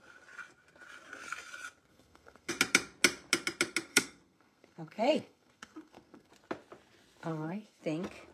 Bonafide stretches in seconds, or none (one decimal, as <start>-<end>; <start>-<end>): 0.0-1.9; 2.5-3.9; 6.3-7.3; 7.8-8.3